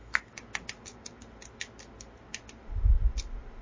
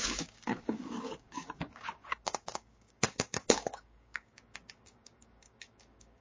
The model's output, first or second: second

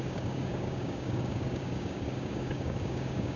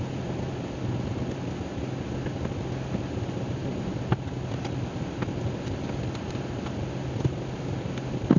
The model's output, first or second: first